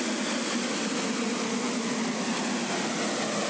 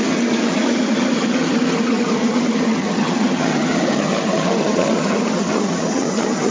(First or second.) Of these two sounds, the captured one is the first